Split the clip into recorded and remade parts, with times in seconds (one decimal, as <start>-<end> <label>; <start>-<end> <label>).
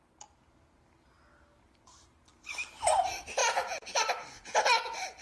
0.0-3.4 recorded; 3.4-4.0 remade; 4.0-5.2 recorded